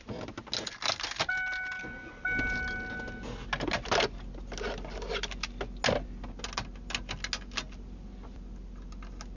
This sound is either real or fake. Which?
real